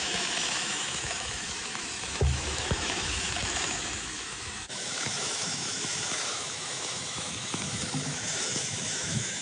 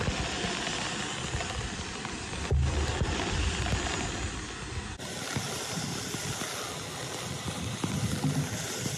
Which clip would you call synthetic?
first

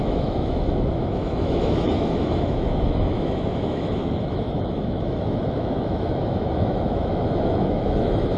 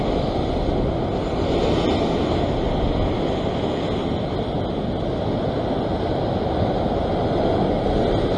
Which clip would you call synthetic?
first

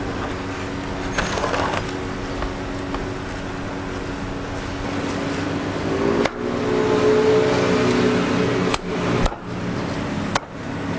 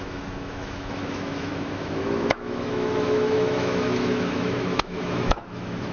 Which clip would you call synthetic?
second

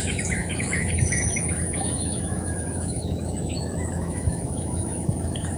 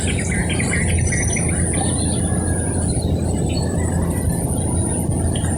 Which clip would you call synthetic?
first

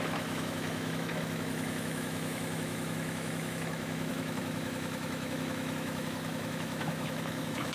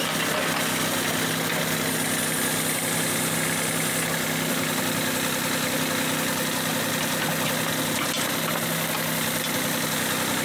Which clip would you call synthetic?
first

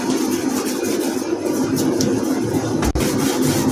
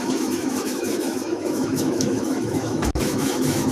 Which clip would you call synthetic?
second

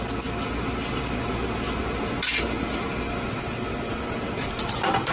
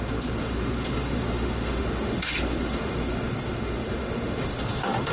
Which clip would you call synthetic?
second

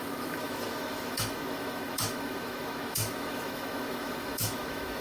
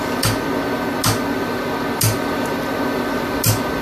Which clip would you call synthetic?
first